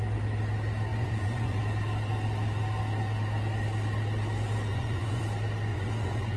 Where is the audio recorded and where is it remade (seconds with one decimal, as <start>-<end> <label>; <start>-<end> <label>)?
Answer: 0.0-0.9 recorded; 0.9-1.6 remade; 1.6-4.7 recorded; 4.7-5.2 remade; 5.2-5.7 recorded; 5.7-6.4 remade